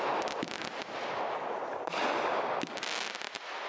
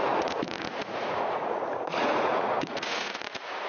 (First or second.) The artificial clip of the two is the second